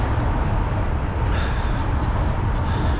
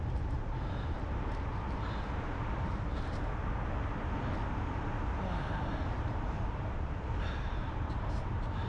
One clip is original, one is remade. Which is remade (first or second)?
second